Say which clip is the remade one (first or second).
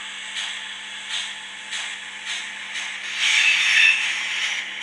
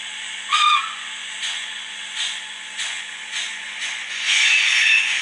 second